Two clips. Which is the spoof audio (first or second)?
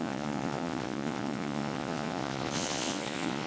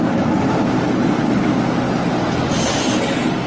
first